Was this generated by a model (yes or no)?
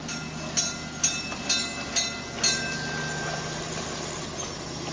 no